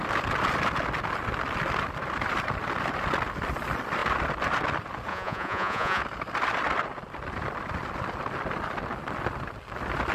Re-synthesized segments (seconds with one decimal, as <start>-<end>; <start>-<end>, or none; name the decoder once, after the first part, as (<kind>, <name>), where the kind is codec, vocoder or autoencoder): 5.1-6.0 (vocoder, Vocos)